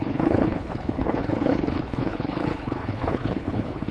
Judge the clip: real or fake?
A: fake